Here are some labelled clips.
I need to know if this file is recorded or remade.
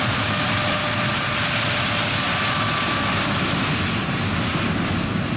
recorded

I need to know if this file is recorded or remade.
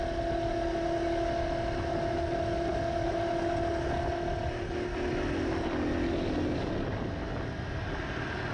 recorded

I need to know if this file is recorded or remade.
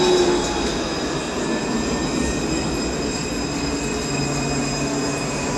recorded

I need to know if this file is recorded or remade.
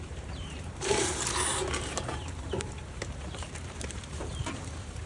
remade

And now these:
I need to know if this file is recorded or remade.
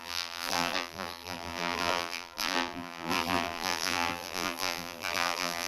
remade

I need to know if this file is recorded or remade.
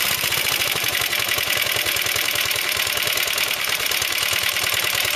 remade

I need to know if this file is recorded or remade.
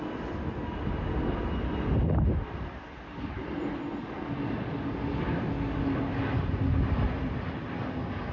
recorded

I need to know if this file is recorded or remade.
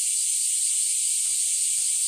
recorded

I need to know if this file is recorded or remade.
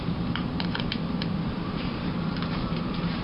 remade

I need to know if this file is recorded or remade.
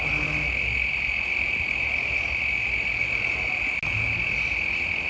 recorded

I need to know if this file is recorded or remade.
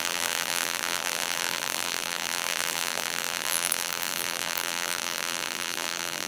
remade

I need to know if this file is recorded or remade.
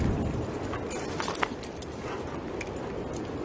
recorded